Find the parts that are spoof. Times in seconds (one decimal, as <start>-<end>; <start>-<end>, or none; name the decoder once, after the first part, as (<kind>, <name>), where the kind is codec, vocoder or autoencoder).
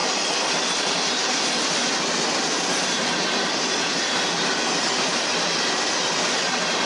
none